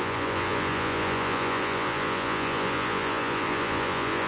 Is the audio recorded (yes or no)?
no